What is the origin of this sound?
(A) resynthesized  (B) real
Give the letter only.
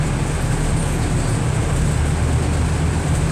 B